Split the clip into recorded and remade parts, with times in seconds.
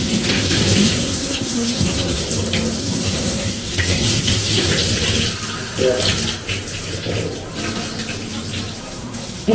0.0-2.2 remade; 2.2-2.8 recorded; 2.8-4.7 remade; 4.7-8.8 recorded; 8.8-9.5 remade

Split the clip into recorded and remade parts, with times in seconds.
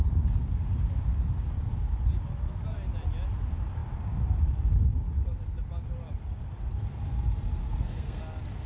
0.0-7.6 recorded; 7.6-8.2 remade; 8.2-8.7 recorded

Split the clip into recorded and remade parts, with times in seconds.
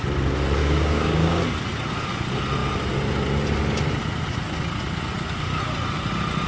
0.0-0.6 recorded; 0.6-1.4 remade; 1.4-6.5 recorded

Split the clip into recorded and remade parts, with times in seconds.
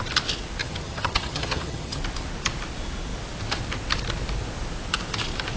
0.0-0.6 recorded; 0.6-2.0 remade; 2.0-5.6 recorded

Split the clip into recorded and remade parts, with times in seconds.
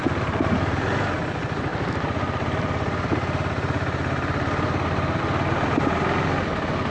0.0-6.9 recorded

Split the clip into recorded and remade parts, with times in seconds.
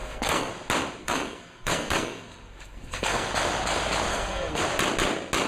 0.0-0.5 remade; 0.5-1.0 recorded; 1.0-3.3 remade; 3.3-4.1 recorded; 4.1-4.6 remade; 4.6-5.5 recorded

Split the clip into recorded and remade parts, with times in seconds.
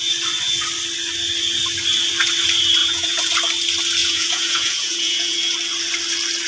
0.0-2.8 recorded; 2.8-3.3 remade; 3.3-4.0 recorded; 4.0-5.4 remade; 5.4-6.5 recorded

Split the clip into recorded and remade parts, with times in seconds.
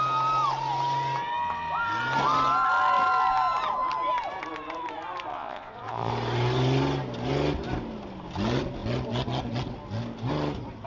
0.0-5.3 recorded; 5.3-6.1 remade; 6.1-10.9 recorded